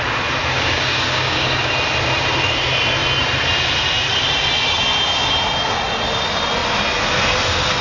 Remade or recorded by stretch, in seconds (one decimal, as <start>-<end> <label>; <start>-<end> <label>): 0.0-0.4 recorded; 0.4-1.7 remade; 1.7-7.8 recorded